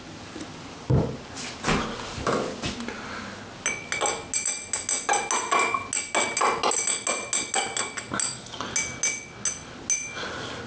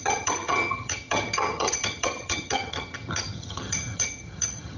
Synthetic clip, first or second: second